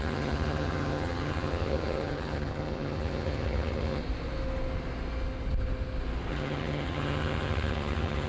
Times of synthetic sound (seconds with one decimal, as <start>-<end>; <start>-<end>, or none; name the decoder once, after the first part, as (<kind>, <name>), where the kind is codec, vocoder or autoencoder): 0.0-4.0 (vocoder, HiFi-GAN); 6.3-8.3